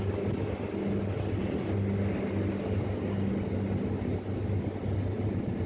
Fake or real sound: real